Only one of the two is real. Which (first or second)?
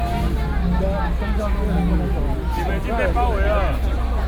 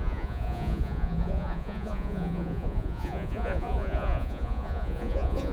first